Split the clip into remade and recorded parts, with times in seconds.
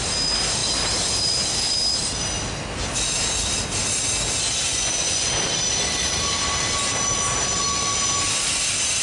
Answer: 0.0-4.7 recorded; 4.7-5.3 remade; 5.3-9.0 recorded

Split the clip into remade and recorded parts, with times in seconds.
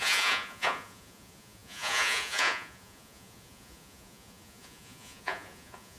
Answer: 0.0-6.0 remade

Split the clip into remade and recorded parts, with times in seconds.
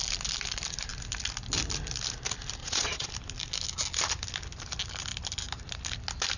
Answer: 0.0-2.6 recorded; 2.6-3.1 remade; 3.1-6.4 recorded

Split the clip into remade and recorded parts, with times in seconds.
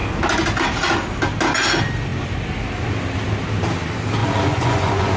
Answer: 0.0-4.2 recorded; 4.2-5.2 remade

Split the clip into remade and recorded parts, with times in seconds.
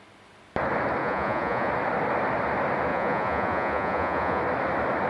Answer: 0.0-1.0 recorded; 1.0-1.7 remade; 1.7-2.9 recorded; 2.9-4.4 remade; 4.4-5.1 recorded